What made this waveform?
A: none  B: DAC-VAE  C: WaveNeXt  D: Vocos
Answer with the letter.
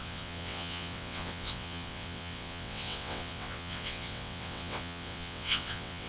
C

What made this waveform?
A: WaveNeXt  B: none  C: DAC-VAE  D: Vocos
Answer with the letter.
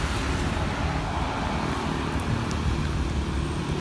B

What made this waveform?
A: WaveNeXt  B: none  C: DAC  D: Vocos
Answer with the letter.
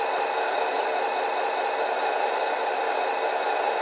B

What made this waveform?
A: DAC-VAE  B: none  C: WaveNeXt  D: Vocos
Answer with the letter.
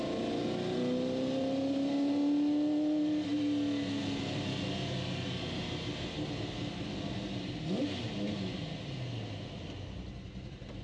B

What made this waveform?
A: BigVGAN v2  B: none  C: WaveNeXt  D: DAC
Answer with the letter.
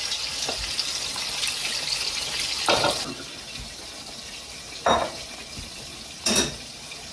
B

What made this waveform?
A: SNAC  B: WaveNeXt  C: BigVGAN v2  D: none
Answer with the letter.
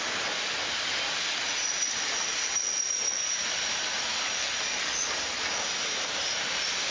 D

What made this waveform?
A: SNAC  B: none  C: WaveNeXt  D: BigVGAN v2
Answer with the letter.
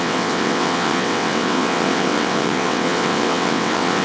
C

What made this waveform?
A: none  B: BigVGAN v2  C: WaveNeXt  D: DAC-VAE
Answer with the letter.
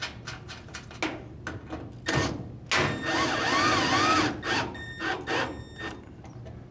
A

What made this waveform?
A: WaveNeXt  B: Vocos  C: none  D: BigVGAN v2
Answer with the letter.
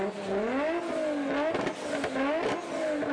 C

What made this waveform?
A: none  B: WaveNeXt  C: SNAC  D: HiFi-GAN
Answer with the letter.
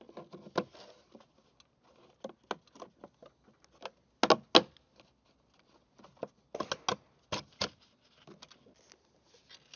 A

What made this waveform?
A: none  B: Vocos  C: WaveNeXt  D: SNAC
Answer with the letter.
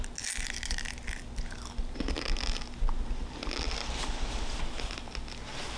A